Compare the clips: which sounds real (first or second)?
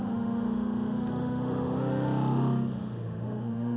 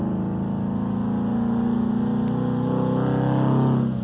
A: second